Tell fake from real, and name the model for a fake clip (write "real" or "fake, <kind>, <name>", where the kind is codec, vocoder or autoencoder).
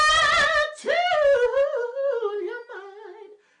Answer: real